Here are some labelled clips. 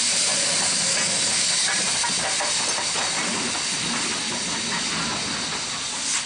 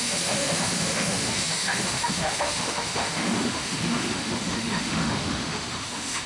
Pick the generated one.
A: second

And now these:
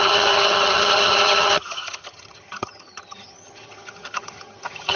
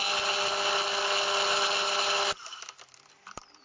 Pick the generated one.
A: first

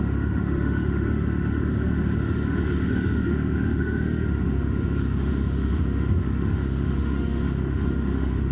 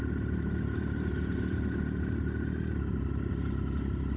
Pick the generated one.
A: first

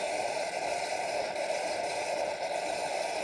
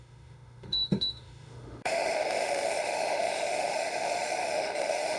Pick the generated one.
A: second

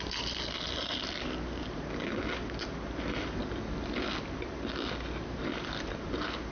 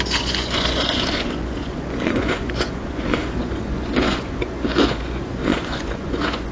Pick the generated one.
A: second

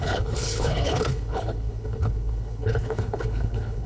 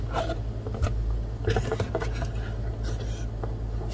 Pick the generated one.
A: first